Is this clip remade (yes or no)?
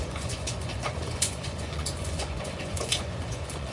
yes